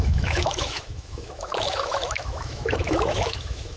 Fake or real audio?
fake